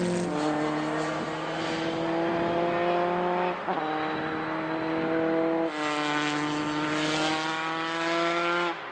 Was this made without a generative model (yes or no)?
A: yes